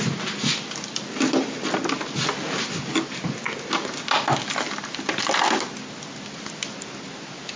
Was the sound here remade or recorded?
recorded